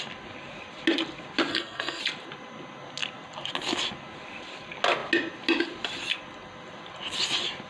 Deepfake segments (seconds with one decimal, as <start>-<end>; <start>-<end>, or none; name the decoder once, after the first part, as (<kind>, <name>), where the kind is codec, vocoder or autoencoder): 1.5-2.0 (codec, SNAC)